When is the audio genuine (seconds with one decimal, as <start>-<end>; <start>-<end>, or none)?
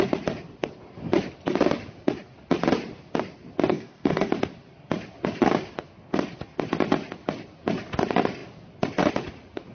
0.0-3.7; 4.3-9.7